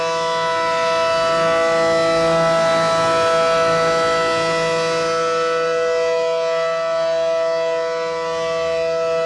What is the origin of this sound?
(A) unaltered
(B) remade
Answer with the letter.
A